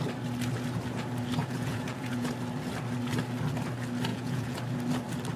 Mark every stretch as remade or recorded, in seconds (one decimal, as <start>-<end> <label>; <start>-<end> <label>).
0.0-1.4 recorded; 1.4-2.3 remade; 2.3-4.1 recorded; 4.1-4.6 remade; 4.6-5.4 recorded